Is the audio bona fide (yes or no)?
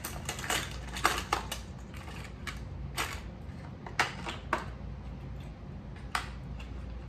yes